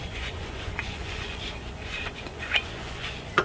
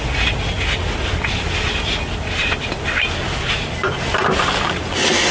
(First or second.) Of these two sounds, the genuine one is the second